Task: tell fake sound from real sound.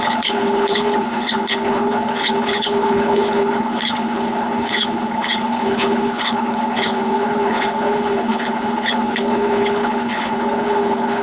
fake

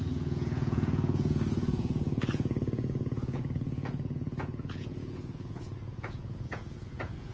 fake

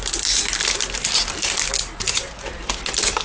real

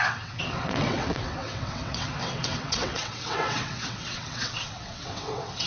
fake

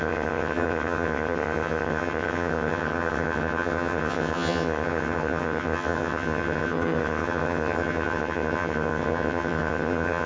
fake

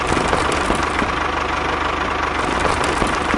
real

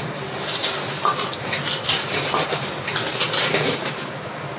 real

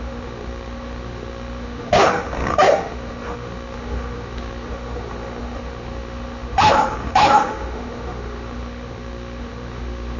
fake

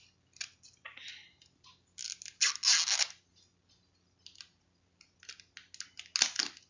real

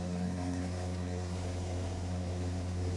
fake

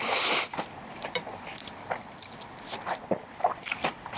fake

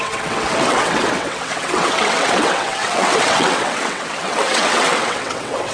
fake